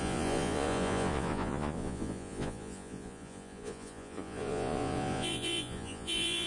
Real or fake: fake